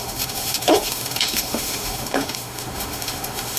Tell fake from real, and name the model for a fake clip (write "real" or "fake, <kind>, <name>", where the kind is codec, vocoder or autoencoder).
fake, autoencoder, DAC-VAE